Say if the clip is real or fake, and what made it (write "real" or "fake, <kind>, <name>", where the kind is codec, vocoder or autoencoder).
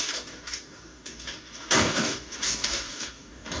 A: fake, codec, DAC